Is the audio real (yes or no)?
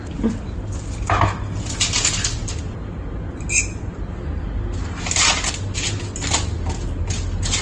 yes